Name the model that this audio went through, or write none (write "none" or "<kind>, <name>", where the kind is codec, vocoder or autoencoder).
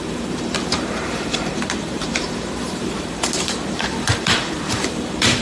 vocoder, BigVGAN v2